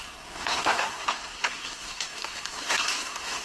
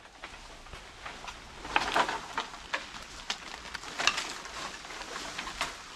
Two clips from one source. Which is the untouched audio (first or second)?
second